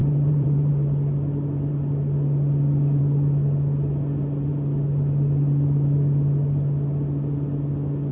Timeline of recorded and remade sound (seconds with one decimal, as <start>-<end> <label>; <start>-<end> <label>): 0.0-0.7 remade; 0.7-8.1 recorded